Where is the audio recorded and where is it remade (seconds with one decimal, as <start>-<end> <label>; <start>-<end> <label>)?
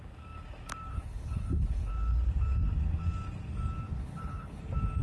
0.0-0.9 recorded; 0.9-1.9 remade; 1.9-4.0 recorded; 4.0-4.6 remade; 4.6-5.0 recorded